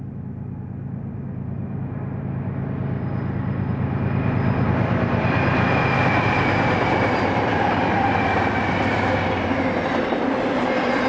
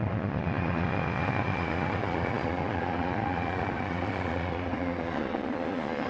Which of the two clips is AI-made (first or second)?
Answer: second